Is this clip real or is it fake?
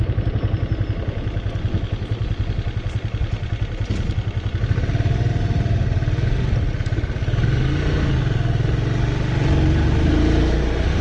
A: real